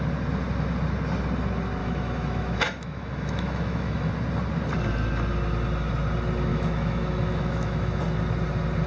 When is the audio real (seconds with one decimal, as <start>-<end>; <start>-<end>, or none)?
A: 0.0-1.8; 4.1-6.5; 8.0-8.9